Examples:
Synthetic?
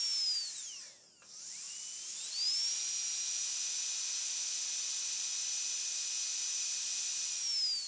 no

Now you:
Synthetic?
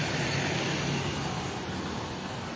no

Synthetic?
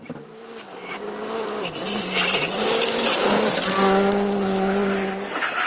no